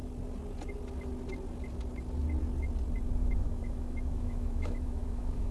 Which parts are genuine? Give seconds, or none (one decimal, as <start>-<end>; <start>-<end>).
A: 0.0-3.2